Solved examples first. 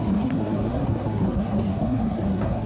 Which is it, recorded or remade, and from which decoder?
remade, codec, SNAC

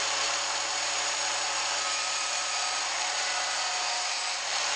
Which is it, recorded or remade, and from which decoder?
remade, vocoder, BigVGAN v2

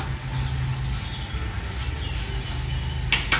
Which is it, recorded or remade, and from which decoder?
recorded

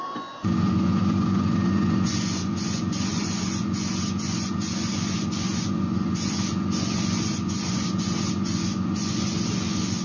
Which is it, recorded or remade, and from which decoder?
remade, vocoder, Vocos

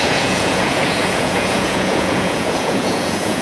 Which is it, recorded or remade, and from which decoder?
remade, vocoder, Vocos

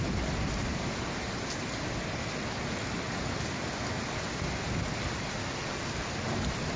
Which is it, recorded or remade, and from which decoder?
recorded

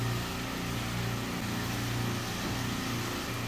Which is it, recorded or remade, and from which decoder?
recorded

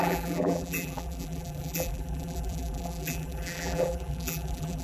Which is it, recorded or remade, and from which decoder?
remade, vocoder, BigVGAN v2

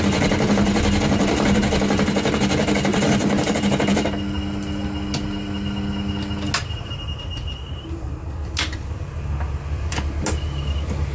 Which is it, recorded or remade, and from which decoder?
recorded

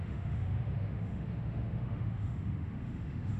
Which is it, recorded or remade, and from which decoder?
remade, autoencoder, DAC-VAE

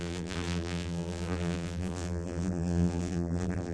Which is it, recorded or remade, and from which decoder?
remade, vocoder, BigVGAN v2